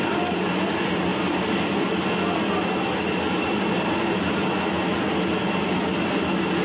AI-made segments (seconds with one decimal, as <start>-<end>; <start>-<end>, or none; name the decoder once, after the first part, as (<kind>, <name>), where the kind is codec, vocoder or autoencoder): none